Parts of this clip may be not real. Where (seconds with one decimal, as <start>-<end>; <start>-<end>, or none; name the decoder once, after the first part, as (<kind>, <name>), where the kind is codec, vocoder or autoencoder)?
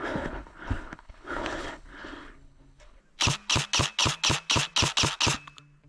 0.0-3.0 (codec, HILCodec)